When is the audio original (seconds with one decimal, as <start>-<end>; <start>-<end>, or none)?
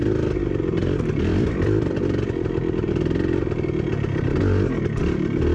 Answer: 0.0-1.3; 2.9-5.5